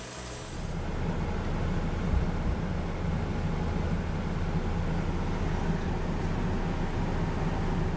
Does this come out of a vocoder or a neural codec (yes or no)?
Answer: no